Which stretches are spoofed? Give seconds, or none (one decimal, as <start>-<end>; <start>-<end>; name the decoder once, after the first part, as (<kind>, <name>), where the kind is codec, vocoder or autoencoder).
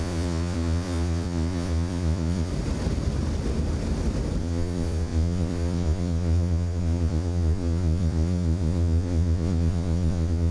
0.0-2.5 (vocoder, Vocos); 4.4-10.5